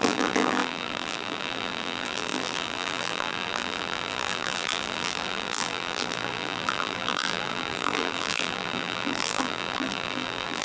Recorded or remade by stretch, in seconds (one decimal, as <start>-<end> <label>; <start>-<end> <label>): 0.0-10.6 remade